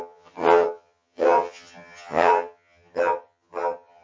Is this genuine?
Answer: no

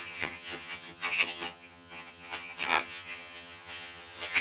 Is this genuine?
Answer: no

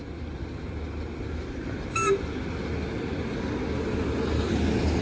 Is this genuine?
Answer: yes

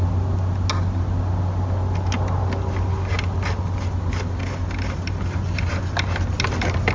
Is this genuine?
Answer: yes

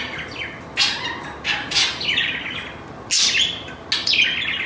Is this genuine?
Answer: yes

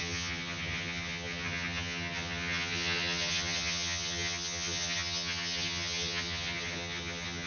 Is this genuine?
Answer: no